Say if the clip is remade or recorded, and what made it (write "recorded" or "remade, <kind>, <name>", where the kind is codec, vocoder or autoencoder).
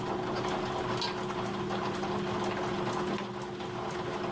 recorded